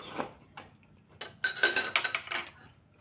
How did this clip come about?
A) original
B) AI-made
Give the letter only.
A